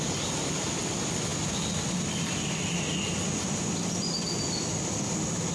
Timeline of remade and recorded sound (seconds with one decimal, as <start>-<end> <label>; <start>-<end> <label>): 0.0-5.5 recorded